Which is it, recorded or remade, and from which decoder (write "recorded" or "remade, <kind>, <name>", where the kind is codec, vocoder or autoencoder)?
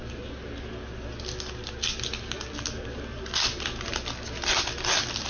recorded